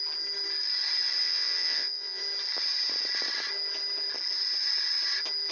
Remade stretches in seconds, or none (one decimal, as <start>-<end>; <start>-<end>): 1.2-2.2